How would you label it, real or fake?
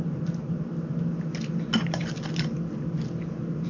real